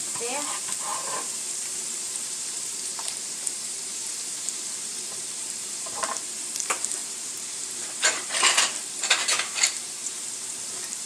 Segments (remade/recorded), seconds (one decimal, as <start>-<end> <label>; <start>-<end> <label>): 0.0-11.1 remade